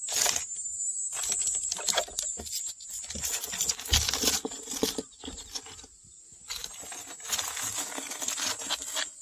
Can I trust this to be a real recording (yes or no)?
yes